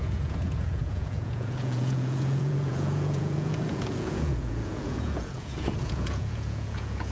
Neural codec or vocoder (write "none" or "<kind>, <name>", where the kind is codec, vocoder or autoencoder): vocoder, Vocos